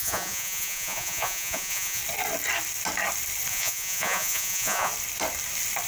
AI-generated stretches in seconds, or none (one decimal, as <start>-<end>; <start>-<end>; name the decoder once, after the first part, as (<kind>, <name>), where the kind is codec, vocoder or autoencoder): 0.0-2.0 (vocoder, Vocos); 3.5-4.9